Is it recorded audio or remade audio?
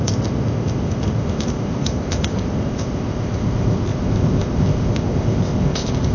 remade